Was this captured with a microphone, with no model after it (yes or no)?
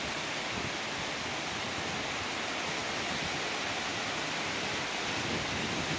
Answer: yes